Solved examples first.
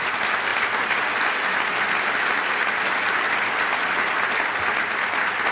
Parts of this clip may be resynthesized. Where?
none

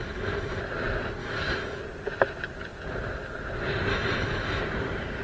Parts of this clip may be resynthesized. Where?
0.0-0.6; 1.2-1.8; 3.9-4.6

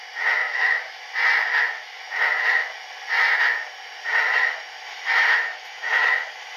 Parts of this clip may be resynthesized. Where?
0.4-1.0; 1.4-2.0; 4.9-5.7

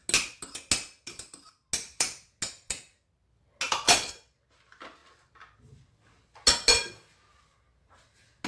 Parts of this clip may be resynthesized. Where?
none

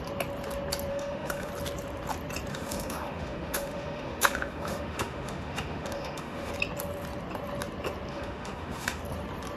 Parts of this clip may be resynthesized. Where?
0.9-1.5; 2.5-6.5; 8.1-9.0

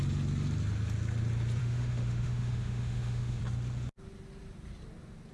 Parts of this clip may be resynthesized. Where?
1.6-3.4